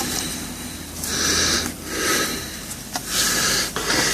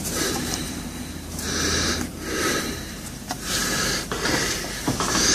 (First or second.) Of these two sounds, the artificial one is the second